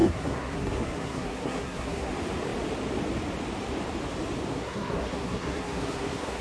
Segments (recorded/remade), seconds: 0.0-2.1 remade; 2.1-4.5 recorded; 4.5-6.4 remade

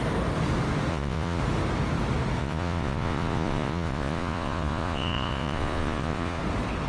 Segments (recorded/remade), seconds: 0.0-0.9 recorded; 0.9-1.4 remade; 1.4-2.4 recorded; 2.4-6.4 remade; 6.4-6.9 recorded

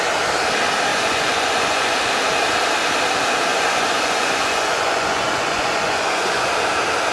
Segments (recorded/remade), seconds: 0.0-0.9 recorded; 0.9-2.1 remade; 2.1-3.5 recorded; 3.5-6.5 remade; 6.5-7.1 recorded

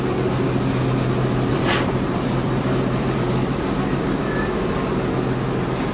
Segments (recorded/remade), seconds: 0.0-1.5 recorded; 1.5-4.8 remade; 4.8-5.9 recorded